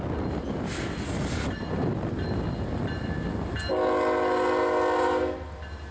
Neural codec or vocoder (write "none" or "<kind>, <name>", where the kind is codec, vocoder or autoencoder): none